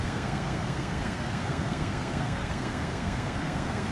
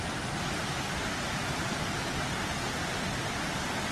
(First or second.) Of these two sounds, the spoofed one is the first